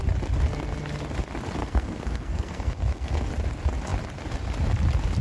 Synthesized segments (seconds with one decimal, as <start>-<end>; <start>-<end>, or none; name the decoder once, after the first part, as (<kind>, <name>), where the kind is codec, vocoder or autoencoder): 1.6-3.3 (codec, SNAC)

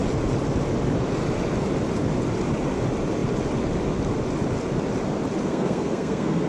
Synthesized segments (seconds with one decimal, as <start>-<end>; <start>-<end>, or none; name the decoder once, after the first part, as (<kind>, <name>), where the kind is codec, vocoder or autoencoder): 5.4-6.5 (codec, SNAC)